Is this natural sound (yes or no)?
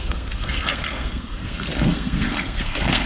no